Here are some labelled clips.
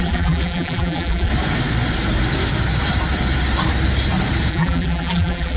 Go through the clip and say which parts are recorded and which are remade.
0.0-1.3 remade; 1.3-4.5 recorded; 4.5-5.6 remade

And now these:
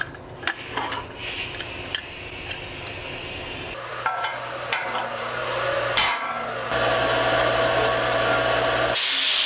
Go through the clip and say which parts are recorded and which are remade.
0.0-3.9 recorded; 3.9-6.3 remade; 6.3-9.5 recorded

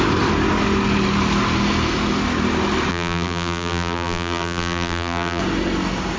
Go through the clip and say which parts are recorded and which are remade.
0.0-2.9 recorded; 2.9-5.4 remade; 5.4-6.2 recorded